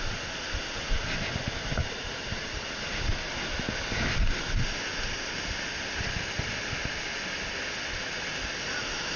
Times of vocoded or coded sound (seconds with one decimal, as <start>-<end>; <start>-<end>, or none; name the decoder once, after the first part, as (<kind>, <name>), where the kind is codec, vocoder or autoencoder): none